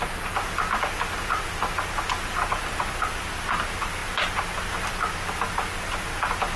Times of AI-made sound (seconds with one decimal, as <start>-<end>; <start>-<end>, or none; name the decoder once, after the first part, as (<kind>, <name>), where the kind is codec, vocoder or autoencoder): none